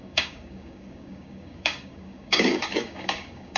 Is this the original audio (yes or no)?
no